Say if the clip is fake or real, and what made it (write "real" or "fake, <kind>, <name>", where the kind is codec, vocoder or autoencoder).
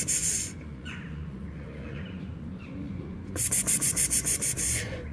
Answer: fake, vocoder, Vocos